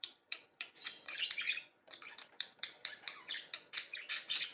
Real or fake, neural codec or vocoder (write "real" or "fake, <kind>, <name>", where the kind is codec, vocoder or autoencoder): fake, vocoder, Vocos